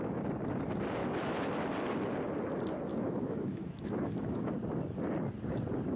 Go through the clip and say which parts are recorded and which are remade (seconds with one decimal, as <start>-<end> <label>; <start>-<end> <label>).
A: 0.0-1.0 recorded; 1.0-1.7 remade; 1.7-2.9 recorded; 2.9-4.5 remade; 4.5-6.0 recorded